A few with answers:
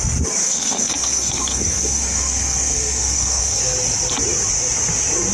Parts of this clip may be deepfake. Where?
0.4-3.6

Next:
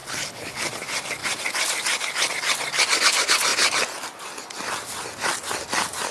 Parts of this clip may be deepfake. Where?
0.0-0.7

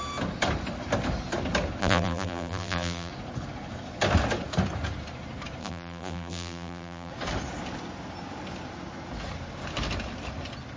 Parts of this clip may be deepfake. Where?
1.8-3.1; 5.6-7.1

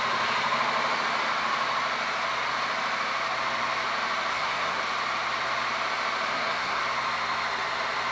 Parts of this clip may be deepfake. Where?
4.3-4.8; 6.3-6.8

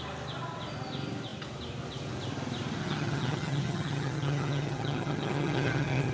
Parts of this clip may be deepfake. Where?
2.8-6.1

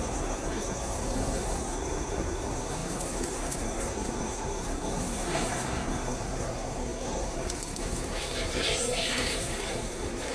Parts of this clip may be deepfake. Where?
0.0-10.3

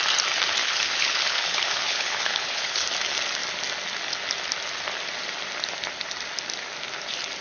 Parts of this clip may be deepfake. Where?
0.6-2.8

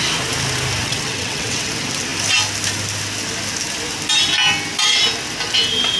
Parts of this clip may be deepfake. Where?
0.8-1.7